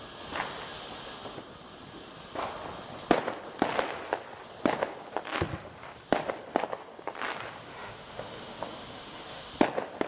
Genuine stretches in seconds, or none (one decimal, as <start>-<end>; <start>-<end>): 0.0-7.7; 9.5-10.1